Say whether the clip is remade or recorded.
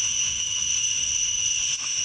remade